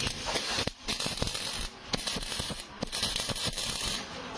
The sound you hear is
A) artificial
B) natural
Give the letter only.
A